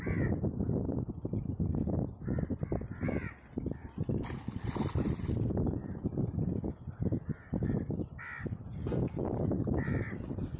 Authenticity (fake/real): real